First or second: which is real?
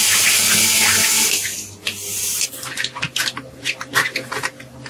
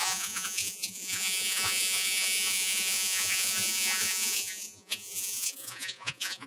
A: first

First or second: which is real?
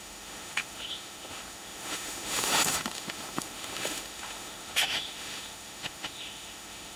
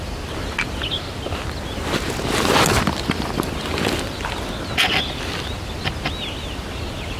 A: second